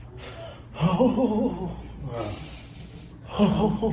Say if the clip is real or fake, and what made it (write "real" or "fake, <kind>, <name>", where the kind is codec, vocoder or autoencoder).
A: real